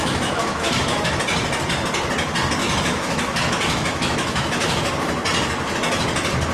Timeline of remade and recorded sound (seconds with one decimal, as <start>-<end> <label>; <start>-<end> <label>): 0.0-1.2 remade; 1.2-2.6 recorded; 2.6-4.9 remade; 4.9-6.5 recorded